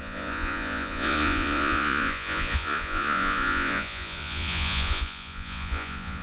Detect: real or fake fake